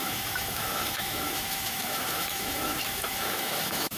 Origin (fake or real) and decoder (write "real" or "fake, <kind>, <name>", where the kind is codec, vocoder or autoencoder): fake, autoencoder, DAC-VAE